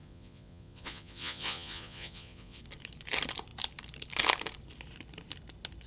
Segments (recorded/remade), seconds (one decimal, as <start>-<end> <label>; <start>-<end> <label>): 0.0-2.6 remade; 2.6-5.9 recorded